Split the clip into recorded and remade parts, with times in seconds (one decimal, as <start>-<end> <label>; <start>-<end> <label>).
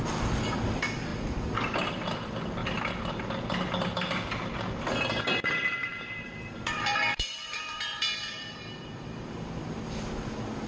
0.0-5.8 recorded; 5.8-9.8 remade; 9.8-10.7 recorded